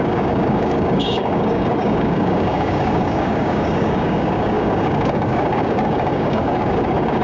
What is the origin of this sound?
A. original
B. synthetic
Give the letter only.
B